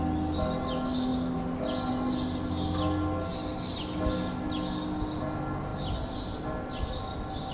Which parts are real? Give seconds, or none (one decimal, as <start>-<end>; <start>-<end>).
0.0-7.5